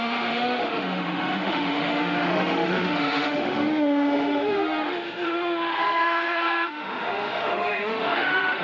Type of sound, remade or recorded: remade